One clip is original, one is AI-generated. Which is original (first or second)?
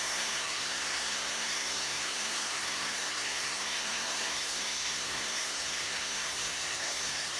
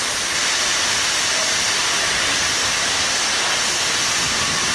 second